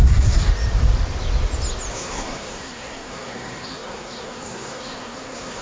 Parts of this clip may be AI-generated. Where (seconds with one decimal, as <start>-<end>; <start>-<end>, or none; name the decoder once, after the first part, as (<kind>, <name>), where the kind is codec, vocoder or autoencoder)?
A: 0.0-0.5 (codec, SNAC); 1.9-5.6